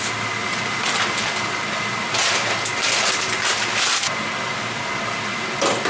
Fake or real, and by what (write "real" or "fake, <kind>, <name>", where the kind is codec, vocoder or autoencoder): real